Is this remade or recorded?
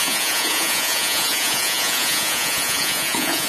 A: remade